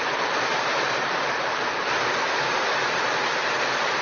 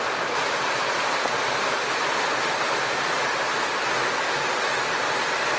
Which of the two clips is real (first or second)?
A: second